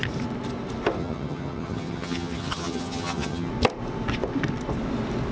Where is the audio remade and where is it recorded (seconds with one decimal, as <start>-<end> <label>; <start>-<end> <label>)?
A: 0.0-1.0 recorded; 1.0-3.5 remade; 3.5-5.3 recorded